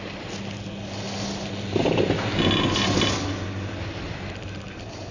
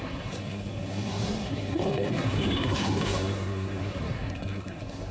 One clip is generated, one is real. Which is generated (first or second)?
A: second